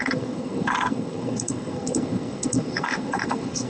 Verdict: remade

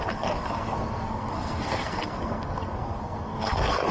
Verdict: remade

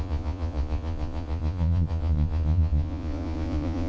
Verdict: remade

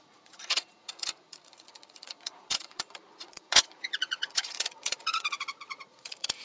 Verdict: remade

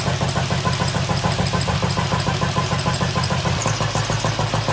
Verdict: recorded